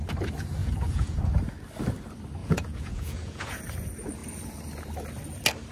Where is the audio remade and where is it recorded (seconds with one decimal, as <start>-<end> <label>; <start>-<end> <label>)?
0.0-0.6 recorded; 0.6-1.2 remade; 1.2-2.4 recorded; 2.4-3.6 remade; 3.6-5.7 recorded